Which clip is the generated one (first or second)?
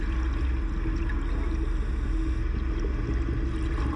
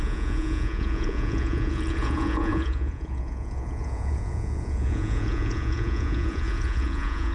second